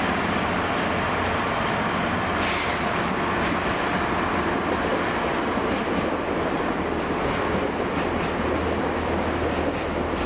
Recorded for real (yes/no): yes